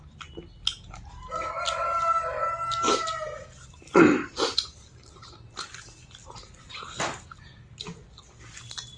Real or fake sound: real